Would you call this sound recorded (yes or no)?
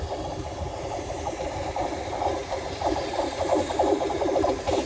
no